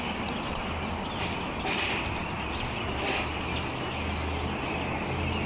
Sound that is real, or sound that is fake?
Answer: real